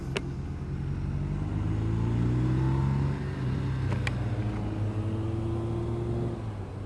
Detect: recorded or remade recorded